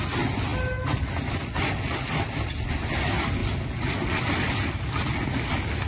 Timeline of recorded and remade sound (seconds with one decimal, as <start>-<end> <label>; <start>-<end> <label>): 0.0-5.9 recorded